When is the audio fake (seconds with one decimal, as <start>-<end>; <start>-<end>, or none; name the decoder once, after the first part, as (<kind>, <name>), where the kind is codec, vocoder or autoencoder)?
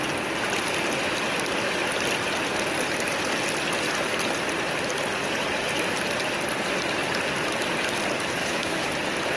8.4-8.9 (autoencoder, DAC-VAE)